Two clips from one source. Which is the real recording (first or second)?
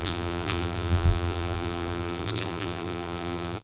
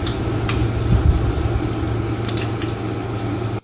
second